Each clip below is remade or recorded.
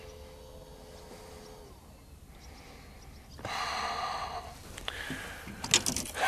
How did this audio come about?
recorded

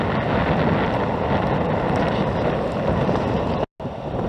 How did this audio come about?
recorded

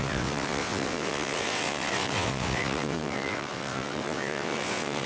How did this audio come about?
remade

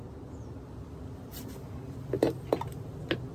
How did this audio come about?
recorded